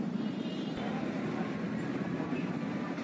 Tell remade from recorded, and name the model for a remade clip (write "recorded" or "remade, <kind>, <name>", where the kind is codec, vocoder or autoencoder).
remade, vocoder, BigVGAN v2